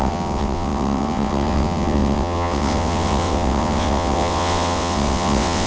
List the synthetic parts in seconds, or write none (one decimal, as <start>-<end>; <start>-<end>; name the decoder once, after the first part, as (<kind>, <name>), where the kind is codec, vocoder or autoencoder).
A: 0.0-5.7 (vocoder, WaveNeXt)